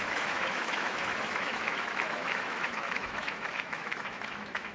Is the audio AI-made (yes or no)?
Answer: yes